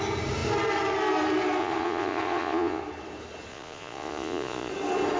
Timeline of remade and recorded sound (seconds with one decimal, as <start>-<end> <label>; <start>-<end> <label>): 0.0-1.6 recorded; 1.6-2.8 remade; 2.8-3.5 recorded; 3.5-4.7 remade; 4.7-5.2 recorded